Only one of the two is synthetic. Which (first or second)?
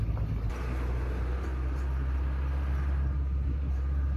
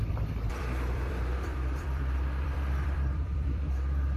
second